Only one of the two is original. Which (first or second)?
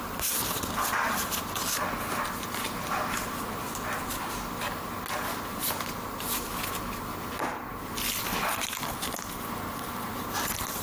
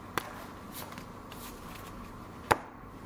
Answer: first